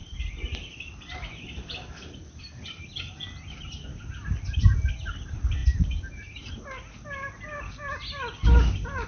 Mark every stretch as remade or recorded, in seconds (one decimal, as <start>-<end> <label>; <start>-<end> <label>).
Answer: 0.0-9.1 recorded